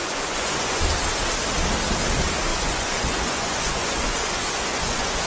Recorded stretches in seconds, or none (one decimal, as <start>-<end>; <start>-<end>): 0.8-2.5